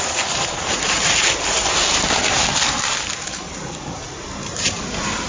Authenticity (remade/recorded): remade